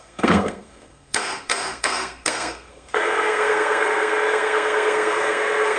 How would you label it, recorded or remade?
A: remade